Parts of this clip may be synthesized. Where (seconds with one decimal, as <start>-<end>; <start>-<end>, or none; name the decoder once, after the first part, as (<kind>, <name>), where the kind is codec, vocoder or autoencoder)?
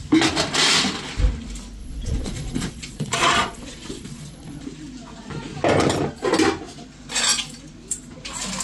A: 1.8-4.6 (vocoder, Vocos)